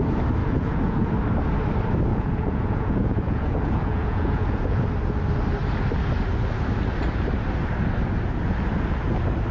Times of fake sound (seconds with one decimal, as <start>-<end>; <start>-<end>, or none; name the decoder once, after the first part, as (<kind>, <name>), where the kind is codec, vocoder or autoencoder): 0.4-1.1 (vocoder, Vocos); 2.1-4.8